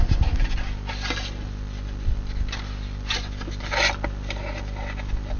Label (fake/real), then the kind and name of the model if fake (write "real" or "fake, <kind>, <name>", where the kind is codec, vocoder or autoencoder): real